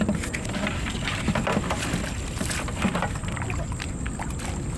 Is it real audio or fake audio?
real